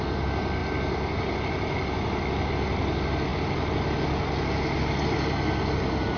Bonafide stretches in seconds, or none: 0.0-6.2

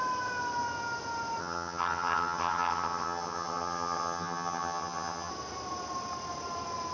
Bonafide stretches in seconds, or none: 0.0-1.4; 5.3-6.9

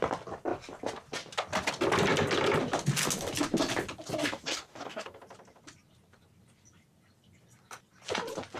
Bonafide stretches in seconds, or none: 0.0-4.2; 5.2-8.6

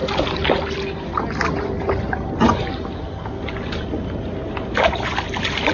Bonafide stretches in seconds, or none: 0.0-5.7

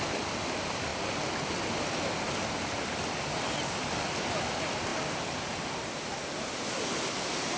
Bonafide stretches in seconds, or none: 0.0-7.6